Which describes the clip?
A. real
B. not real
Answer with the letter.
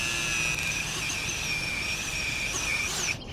A